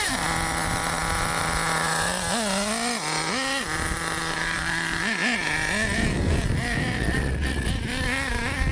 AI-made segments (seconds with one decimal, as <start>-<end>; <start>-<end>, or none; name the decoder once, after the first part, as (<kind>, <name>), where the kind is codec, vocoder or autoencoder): 7.0-7.7 (vocoder, Vocos)